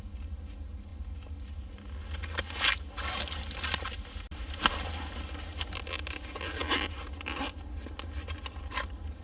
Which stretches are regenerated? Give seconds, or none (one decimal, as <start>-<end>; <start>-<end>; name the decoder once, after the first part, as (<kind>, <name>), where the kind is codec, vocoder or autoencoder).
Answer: none